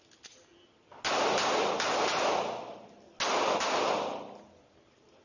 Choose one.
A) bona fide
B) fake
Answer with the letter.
A